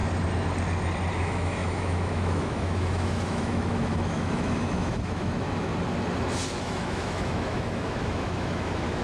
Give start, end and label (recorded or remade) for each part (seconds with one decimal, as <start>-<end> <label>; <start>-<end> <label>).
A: 0.0-1.1 recorded; 1.1-5.7 remade; 5.7-6.6 recorded; 6.6-9.0 remade